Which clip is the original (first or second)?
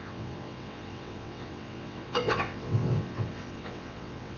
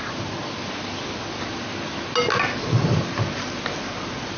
second